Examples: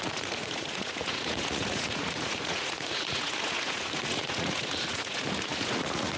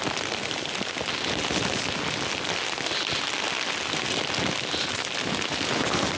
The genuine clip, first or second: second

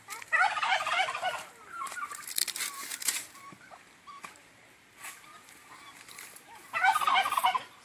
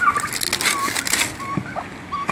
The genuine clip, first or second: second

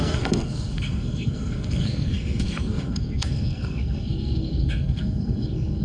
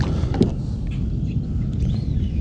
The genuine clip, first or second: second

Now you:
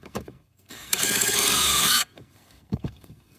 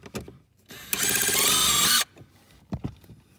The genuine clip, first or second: second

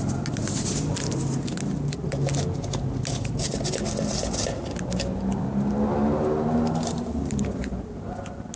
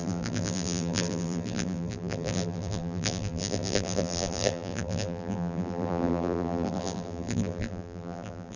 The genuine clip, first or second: first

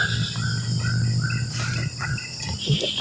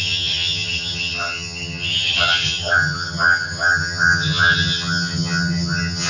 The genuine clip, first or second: first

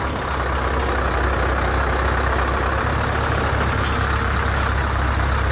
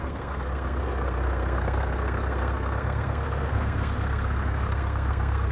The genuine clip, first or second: first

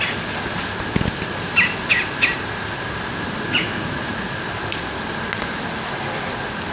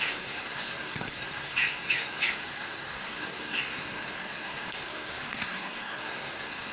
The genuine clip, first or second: first